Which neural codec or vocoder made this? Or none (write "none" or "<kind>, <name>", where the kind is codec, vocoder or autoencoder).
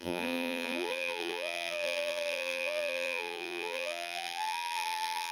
vocoder, BigVGAN v2